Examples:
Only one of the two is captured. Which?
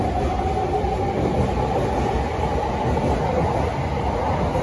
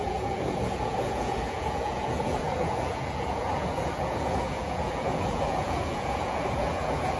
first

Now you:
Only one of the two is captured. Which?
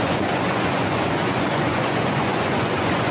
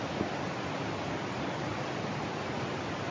second